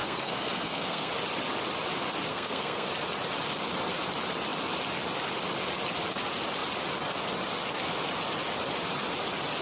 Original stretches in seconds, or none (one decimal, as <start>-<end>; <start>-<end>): 1.1-2.3; 2.9-9.6